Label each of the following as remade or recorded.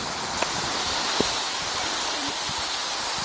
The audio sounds recorded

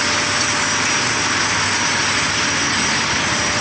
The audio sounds recorded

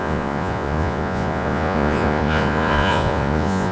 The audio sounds remade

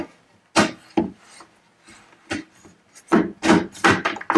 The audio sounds recorded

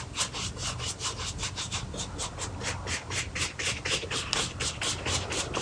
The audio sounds recorded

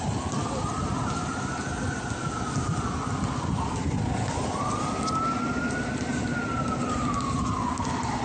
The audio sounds recorded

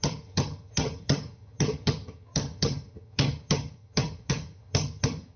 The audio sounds remade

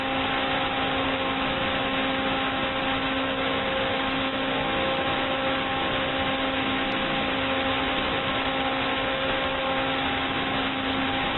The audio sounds recorded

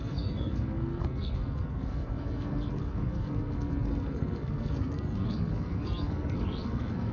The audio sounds remade